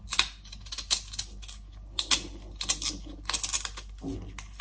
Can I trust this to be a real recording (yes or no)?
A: yes